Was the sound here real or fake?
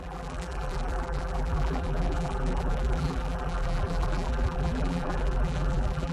fake